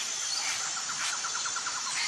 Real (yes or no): yes